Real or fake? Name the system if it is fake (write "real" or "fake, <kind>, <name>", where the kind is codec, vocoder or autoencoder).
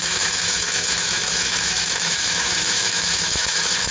fake, autoencoder, DAC-VAE